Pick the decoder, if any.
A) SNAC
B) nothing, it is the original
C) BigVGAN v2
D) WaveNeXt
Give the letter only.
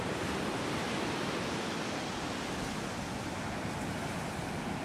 B